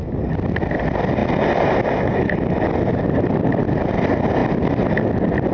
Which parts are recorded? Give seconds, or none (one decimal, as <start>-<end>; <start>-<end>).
0.0-1.2; 3.8-4.4